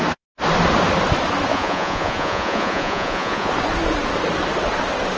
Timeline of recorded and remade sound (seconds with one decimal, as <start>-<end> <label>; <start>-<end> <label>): 0.0-1.5 recorded; 1.5-3.5 remade; 3.5-5.2 recorded